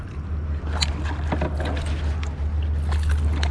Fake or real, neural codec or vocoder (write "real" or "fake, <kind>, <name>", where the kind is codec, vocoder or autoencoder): real